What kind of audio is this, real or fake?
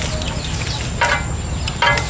real